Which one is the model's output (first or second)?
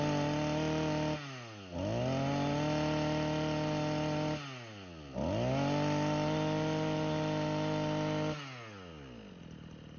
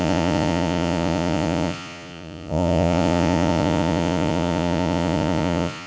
second